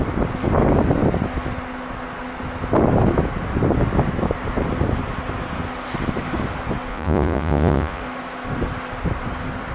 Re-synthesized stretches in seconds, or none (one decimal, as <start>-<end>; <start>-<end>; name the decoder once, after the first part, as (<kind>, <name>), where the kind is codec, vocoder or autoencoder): 6.9-8.0 (vocoder, Vocos)